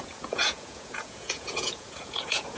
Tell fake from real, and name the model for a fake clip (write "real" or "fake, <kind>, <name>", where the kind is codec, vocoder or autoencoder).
fake, vocoder, Vocos